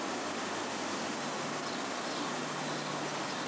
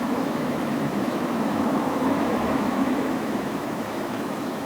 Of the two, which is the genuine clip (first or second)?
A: first